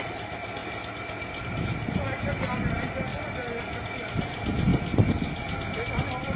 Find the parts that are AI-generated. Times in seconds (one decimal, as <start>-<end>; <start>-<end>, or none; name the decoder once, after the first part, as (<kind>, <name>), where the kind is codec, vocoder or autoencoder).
none